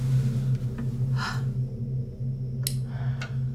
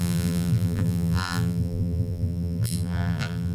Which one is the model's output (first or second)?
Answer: second